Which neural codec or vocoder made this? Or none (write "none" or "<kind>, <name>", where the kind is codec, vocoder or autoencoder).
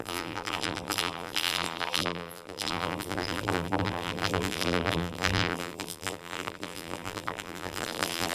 vocoder, BigVGAN v2